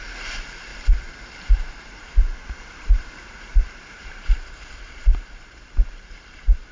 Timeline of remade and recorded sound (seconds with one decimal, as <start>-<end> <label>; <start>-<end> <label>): 0.0-0.7 remade; 0.7-1.5 recorded; 1.5-6.7 remade